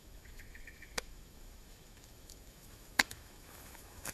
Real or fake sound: fake